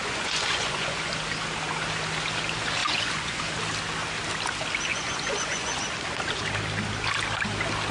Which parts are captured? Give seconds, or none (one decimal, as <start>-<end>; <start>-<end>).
1.1-2.8; 3.4-4.9; 5.9-7.9